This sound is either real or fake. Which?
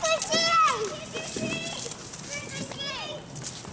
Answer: real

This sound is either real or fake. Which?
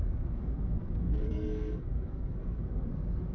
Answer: fake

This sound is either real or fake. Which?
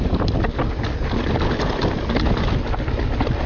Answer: real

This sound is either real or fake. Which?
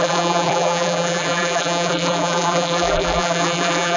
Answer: fake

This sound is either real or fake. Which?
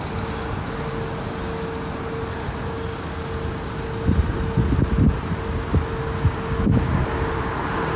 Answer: real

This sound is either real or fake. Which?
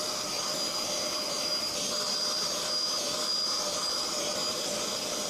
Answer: real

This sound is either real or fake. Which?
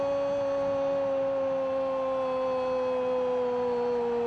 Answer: real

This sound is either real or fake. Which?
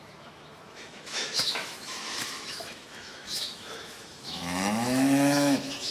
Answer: fake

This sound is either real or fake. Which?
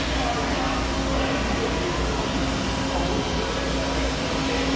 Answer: real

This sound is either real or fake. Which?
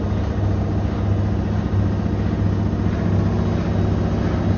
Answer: real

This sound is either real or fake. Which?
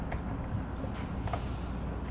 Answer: real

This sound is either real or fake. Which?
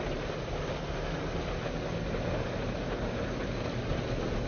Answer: real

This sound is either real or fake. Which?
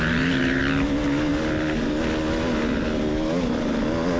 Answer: real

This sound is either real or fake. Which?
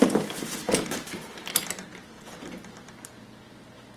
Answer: real